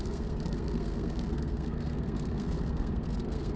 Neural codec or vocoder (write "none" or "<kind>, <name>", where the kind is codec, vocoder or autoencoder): codec, SNAC